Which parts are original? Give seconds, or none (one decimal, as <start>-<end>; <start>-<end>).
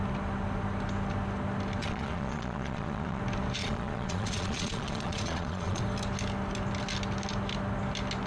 0.0-1.8; 3.2-3.6; 5.8-8.3